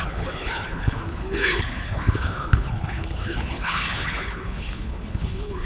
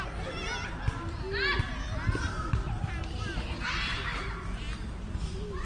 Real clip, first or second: second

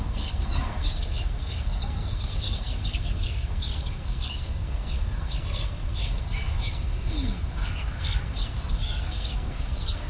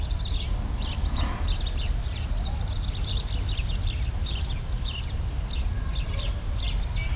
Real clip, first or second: second